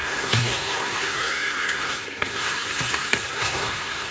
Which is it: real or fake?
fake